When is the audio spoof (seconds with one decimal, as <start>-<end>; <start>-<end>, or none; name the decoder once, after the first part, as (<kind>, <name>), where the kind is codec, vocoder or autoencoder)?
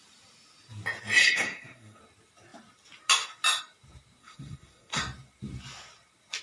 1.2-2.0 (codec, SNAC); 4.2-5.0